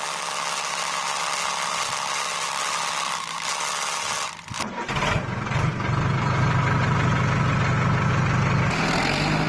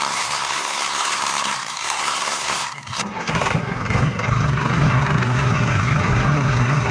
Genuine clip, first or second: first